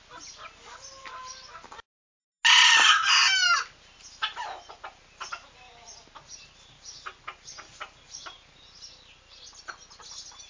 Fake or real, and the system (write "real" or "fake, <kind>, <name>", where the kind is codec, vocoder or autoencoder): real